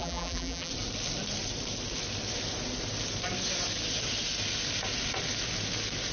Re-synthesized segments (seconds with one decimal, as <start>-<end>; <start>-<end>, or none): 0.0-0.7